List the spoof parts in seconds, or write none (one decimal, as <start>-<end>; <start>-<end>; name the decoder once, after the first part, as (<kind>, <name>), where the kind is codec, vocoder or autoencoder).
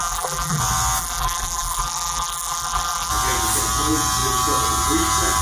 0.0-0.6 (vocoder, BigVGAN v2); 1.0-3.1